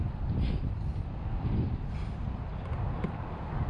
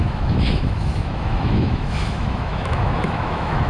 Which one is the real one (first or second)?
first